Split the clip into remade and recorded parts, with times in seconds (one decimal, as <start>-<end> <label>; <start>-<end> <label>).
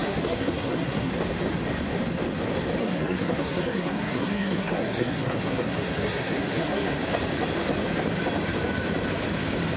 0.0-1.1 remade; 1.1-2.8 recorded; 2.8-7.0 remade; 7.0-9.8 recorded